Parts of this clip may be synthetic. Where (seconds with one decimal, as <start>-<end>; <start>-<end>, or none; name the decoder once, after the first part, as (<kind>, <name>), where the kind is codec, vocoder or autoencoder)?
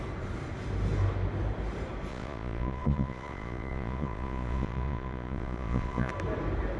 2.1-6.1 (vocoder, Vocos)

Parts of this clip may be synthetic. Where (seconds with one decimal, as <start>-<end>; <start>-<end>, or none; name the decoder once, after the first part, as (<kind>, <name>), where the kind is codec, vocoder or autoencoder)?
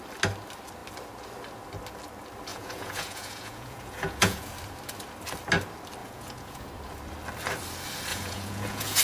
2.5-4.5 (vocoder, Vocos); 6.0-6.7; 8.1-9.0